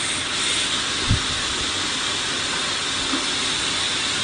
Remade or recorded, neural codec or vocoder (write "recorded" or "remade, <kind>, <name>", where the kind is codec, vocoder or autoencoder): recorded